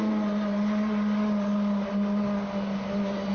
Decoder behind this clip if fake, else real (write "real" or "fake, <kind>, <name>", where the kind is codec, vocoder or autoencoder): real